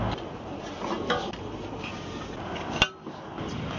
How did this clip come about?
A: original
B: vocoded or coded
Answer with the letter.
A